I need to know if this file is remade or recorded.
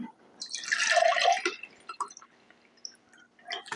remade